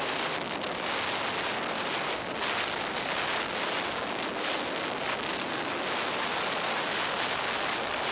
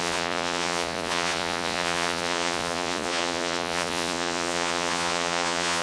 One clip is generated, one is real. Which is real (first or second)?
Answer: first